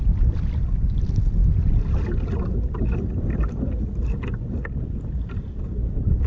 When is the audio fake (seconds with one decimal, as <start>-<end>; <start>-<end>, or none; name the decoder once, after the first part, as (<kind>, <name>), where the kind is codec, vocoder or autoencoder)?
none